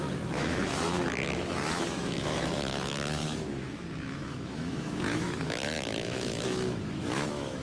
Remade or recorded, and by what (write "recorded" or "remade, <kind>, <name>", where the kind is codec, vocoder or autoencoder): remade, autoencoder, DAC-VAE